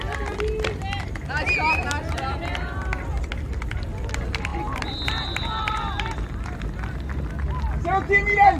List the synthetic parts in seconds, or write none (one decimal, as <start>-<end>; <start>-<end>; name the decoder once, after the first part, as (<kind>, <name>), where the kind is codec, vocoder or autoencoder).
none